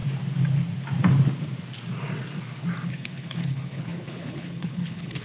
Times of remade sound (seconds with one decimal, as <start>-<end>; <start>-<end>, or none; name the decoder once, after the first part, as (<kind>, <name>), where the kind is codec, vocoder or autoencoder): 2.9-5.2 (codec, HILCodec)